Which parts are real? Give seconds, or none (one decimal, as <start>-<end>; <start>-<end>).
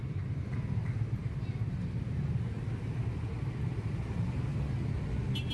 0.0-5.5